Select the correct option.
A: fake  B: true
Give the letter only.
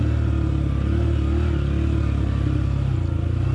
B